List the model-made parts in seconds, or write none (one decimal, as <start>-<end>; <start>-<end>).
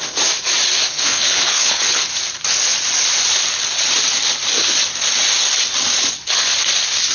0.9-2.1